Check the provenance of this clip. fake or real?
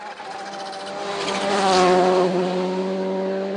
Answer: real